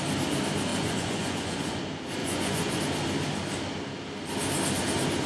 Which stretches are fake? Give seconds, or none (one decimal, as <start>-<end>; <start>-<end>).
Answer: 0.7-1.8; 2.2-2.8